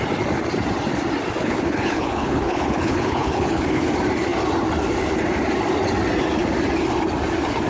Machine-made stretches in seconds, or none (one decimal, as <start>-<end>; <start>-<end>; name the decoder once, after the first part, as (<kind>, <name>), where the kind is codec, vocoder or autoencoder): 1.4-3.9 (codec, HILCodec)